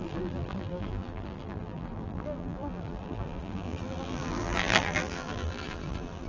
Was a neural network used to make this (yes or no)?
yes